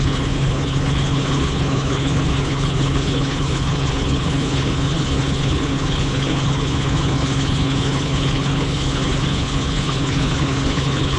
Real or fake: fake